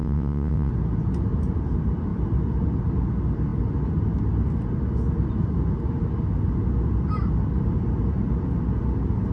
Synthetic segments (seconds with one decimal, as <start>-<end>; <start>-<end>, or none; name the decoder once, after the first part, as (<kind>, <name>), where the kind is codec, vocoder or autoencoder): 0.0-0.7 (vocoder, WaveNeXt)